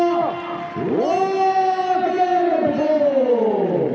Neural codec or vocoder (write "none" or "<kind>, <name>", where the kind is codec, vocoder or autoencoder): none